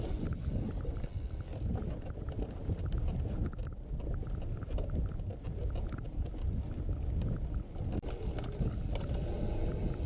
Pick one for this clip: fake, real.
real